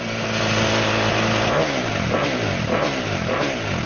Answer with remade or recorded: remade